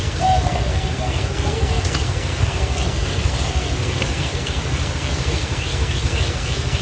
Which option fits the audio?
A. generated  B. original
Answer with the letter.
A